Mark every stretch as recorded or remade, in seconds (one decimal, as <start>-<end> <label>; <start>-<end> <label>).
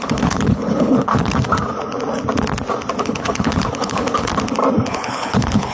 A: 0.0-1.1 remade; 1.1-3.0 recorded; 3.0-4.3 remade; 4.3-4.9 recorded; 4.9-5.7 remade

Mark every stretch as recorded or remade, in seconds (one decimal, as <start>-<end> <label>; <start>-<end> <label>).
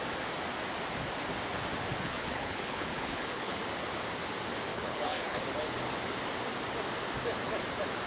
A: 0.0-1.9 recorded; 1.9-3.6 remade; 3.6-4.7 recorded; 4.7-5.4 remade; 5.4-8.1 recorded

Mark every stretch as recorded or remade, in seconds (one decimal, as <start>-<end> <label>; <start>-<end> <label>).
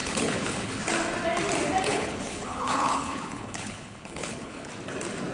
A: 0.0-0.8 remade; 0.8-1.9 recorded; 1.9-4.7 remade; 4.7-5.3 recorded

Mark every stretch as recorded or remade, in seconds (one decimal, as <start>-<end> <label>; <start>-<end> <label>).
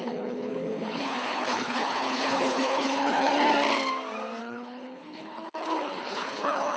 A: 0.0-3.3 remade; 3.3-4.4 recorded; 4.4-6.8 remade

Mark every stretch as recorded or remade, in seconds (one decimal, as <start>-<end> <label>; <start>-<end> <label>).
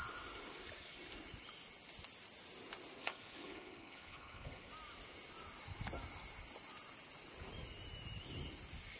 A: 0.0-3.0 recorded; 3.0-4.7 remade; 4.7-9.0 recorded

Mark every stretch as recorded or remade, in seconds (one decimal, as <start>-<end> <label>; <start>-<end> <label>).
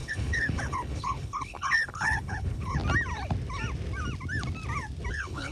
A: 0.0-2.8 remade; 2.8-5.1 recorded; 5.1-5.5 remade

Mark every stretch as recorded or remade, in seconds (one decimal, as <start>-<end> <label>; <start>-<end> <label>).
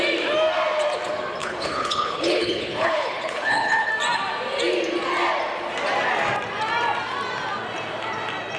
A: 0.0-1.4 recorded; 1.4-3.9 remade; 3.9-8.6 recorded